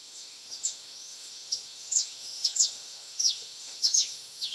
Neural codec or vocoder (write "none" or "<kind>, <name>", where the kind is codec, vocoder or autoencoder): autoencoder, DAC-VAE